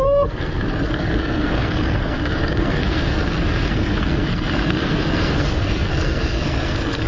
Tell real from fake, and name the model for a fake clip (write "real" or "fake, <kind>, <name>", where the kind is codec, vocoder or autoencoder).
fake, codec, SNAC